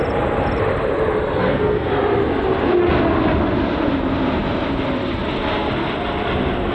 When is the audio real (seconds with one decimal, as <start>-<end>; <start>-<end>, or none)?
0.0-1.4; 1.9-6.7